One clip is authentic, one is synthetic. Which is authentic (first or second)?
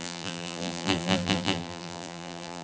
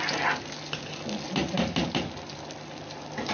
second